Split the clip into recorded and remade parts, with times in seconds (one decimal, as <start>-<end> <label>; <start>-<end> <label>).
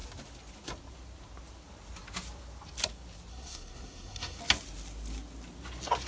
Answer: 0.0-3.3 recorded; 3.3-4.4 remade; 4.4-6.1 recorded